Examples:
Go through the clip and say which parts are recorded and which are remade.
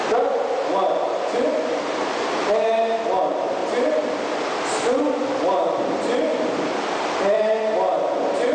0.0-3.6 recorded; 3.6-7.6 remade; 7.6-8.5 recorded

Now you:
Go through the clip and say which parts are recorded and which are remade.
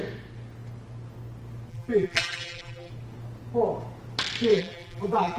0.0-1.7 recorded; 1.7-2.9 remade; 2.9-4.5 recorded; 4.5-5.4 remade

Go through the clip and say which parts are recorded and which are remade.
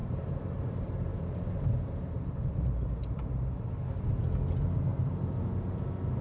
0.0-3.7 remade; 3.7-4.9 recorded; 4.9-5.4 remade; 5.4-6.2 recorded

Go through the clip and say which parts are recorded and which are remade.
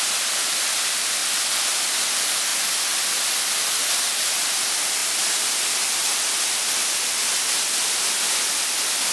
0.0-1.2 recorded; 1.2-1.9 remade; 1.9-5.0 recorded; 5.0-9.1 remade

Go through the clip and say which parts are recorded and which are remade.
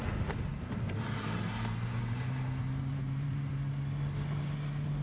0.0-0.5 recorded; 0.5-3.5 remade; 3.5-5.0 recorded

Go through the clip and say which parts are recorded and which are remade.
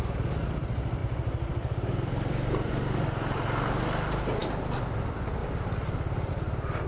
0.0-1.0 recorded; 1.0-2.7 remade; 2.7-4.4 recorded; 4.4-5.0 remade; 5.0-5.4 recorded; 5.4-6.3 remade; 6.3-6.9 recorded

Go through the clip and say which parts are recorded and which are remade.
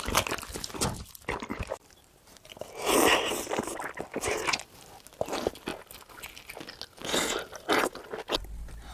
0.0-1.5 recorded; 1.5-2.5 remade; 2.5-8.9 recorded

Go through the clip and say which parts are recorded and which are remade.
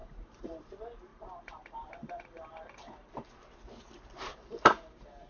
0.0-0.6 remade; 0.6-1.1 recorded; 1.1-3.3 remade; 3.3-4.3 recorded; 4.3-5.3 remade